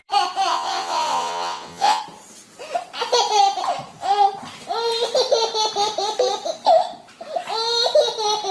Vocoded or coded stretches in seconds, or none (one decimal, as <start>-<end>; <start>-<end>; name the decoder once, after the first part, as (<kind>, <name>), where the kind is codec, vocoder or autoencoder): 0.5-2.0 (vocoder, WaveNeXt)